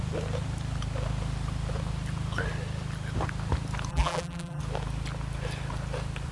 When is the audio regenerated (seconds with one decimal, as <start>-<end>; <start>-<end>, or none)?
3.9-4.6